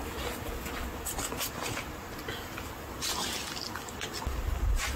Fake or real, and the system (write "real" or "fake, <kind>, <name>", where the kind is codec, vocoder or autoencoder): real